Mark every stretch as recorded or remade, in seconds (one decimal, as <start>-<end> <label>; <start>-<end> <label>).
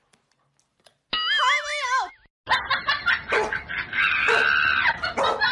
0.0-5.5 recorded